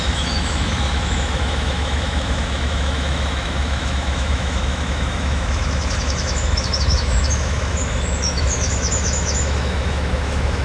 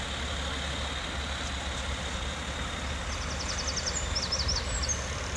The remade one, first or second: first